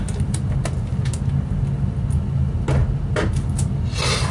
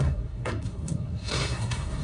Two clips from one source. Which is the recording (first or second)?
first